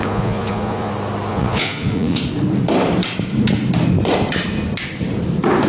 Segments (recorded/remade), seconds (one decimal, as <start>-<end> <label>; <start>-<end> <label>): 0.0-0.9 remade; 0.9-1.3 recorded; 1.3-2.2 remade; 2.2-5.7 recorded